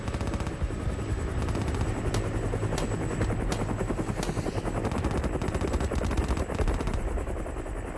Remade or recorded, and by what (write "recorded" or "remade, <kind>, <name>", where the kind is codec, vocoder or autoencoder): recorded